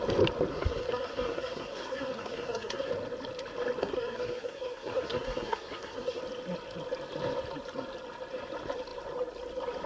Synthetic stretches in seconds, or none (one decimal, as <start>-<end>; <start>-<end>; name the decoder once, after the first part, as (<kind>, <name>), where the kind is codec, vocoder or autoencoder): 0.5-2.9 (codec, SNAC); 3.8-6.2